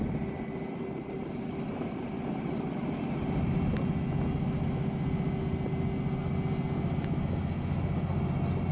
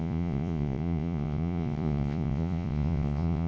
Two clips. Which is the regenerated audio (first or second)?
second